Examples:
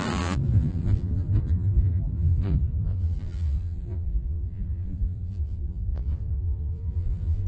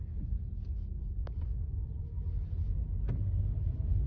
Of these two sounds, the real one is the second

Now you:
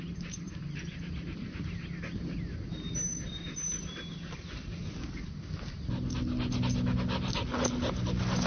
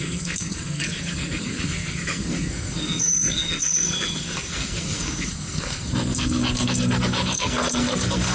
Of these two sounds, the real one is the first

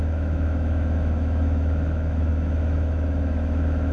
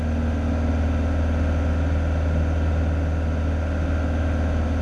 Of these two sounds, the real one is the second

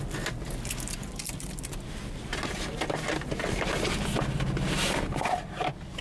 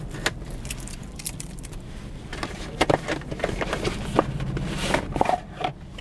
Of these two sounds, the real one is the first